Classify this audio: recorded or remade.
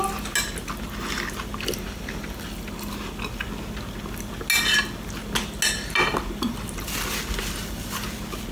recorded